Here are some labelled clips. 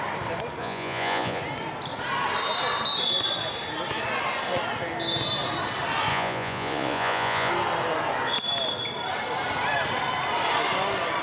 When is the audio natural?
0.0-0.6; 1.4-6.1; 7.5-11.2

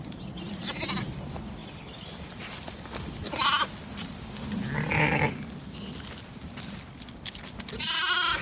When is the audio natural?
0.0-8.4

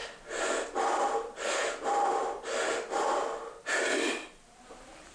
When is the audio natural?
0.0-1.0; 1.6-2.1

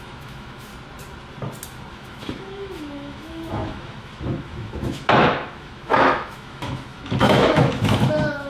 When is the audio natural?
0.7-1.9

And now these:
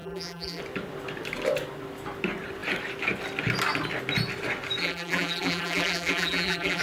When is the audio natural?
0.6-4.8